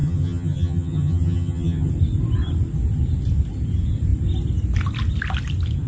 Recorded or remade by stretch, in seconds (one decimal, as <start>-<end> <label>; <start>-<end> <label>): 0.0-1.9 remade; 1.9-5.9 recorded